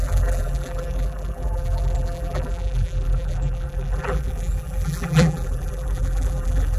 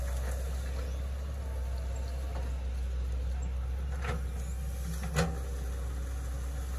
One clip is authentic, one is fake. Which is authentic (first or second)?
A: second